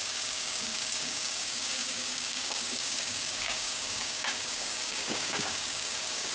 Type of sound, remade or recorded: remade